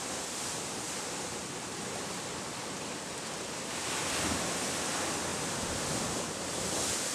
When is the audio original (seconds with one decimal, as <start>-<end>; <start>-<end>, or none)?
none